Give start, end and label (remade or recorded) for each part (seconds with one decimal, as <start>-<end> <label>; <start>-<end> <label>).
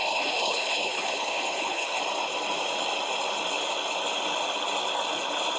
0.0-2.0 remade; 2.0-5.6 recorded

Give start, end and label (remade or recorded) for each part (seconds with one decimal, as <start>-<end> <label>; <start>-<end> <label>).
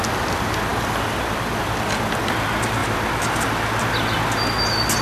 0.0-5.0 recorded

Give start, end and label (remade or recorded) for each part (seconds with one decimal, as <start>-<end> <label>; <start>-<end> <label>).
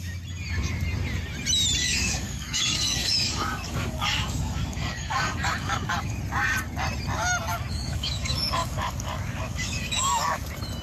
0.0-1.8 recorded; 1.8-6.2 remade; 6.2-7.7 recorded; 7.7-10.4 remade; 10.4-10.8 recorded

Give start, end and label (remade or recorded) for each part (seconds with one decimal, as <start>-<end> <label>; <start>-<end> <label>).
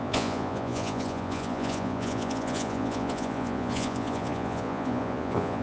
0.0-5.6 remade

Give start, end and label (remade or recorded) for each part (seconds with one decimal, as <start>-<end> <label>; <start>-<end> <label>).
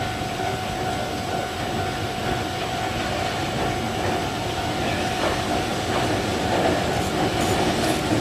0.0-8.2 recorded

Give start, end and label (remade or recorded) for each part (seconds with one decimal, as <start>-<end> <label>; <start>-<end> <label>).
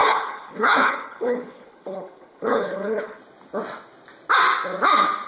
0.0-3.2 remade; 3.2-5.3 recorded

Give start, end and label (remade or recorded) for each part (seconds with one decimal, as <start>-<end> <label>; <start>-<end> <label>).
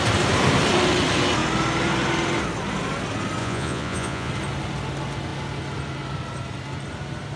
0.0-3.4 recorded; 3.4-4.3 remade; 4.3-7.4 recorded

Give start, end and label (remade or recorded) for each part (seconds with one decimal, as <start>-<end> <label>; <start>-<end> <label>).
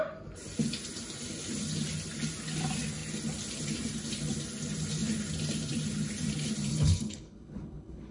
0.0-6.7 recorded; 6.7-8.1 remade